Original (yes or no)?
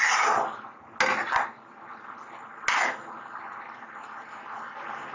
yes